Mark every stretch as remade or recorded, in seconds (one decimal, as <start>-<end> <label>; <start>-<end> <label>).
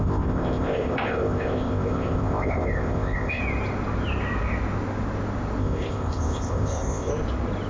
0.0-3.4 remade; 3.4-5.6 recorded; 5.6-7.1 remade; 7.1-7.7 recorded